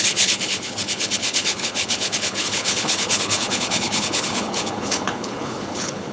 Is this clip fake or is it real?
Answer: fake